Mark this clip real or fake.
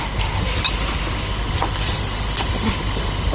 real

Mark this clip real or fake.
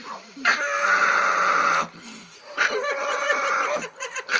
real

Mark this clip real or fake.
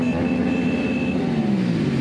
real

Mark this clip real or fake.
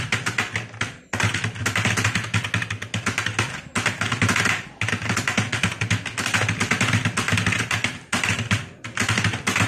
real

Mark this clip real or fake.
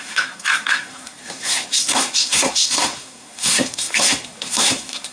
fake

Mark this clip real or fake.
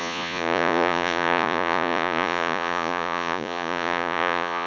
fake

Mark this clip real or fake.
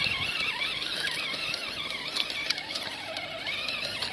real